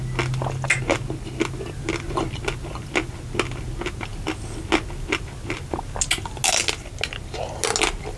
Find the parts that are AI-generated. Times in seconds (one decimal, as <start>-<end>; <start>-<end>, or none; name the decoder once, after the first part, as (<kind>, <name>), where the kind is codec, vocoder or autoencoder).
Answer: none

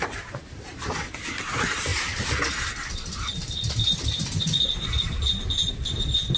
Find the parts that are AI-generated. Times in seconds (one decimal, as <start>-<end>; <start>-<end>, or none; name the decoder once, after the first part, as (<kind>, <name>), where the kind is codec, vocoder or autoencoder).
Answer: 0.0-1.9 (vocoder, BigVGAN v2); 5.7-6.4

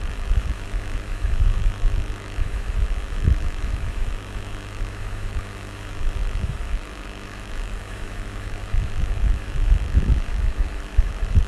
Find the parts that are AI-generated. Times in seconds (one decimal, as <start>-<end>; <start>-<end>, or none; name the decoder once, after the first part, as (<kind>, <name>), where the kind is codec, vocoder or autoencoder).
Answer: 0.0-11.5 (autoencoder, DAC-VAE)